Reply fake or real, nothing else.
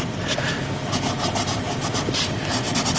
real